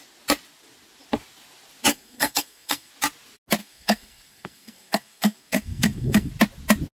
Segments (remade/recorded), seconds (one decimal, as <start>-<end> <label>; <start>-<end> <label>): 0.0-1.9 recorded; 1.9-2.9 remade; 2.9-3.6 recorded; 3.6-6.3 remade; 6.3-6.9 recorded